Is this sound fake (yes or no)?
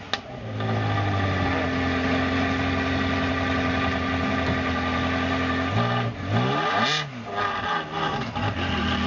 no